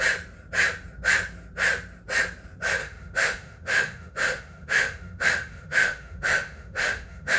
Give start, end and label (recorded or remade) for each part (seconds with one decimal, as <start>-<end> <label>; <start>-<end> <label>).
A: 0.0-2.8 recorded; 2.8-7.4 remade